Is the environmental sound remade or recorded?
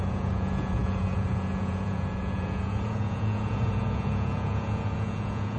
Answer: remade